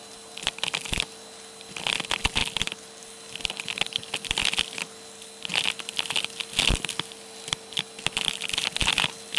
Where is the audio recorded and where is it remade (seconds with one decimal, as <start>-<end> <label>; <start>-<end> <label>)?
0.0-9.4 recorded